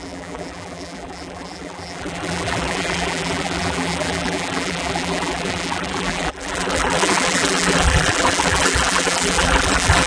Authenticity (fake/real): fake